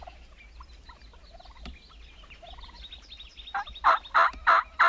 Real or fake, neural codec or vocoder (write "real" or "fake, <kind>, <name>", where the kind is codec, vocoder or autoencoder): real